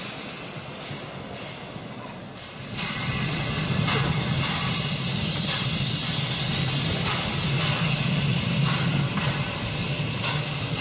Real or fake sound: real